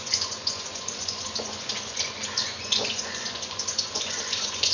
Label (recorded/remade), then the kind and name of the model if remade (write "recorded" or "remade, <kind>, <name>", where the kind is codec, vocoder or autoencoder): remade, vocoder, Vocos